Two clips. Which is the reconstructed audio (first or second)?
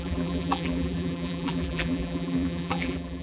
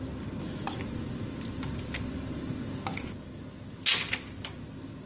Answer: first